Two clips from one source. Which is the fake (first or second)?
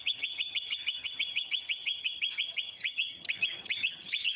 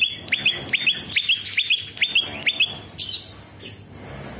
first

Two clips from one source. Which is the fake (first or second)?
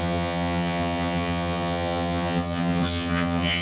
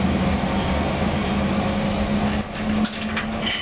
first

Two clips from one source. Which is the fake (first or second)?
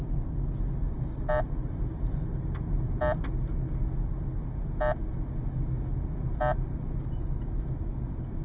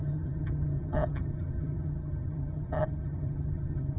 second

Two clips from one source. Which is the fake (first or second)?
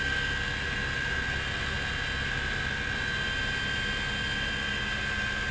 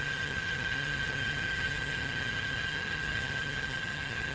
second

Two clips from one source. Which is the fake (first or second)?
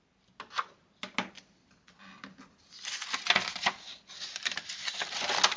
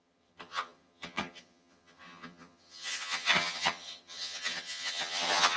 second